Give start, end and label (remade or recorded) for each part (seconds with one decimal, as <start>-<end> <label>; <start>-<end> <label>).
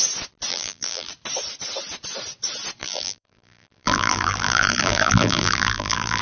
0.0-0.5 recorded; 0.5-1.1 remade; 1.1-2.8 recorded; 2.8-6.2 remade